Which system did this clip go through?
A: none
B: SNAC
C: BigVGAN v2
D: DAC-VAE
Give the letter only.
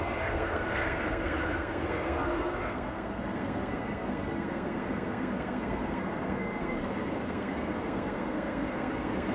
B